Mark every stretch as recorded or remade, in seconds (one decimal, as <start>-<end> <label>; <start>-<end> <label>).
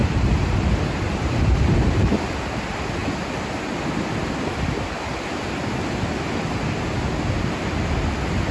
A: 0.0-2.3 remade; 2.3-8.5 recorded